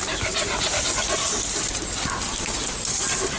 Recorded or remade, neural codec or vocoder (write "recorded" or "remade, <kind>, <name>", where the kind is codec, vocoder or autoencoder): recorded